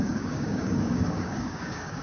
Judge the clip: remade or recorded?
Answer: remade